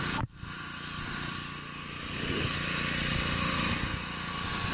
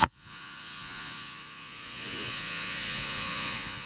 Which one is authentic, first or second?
first